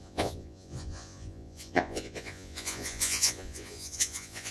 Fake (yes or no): yes